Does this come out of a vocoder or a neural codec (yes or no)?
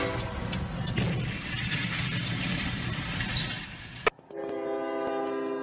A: no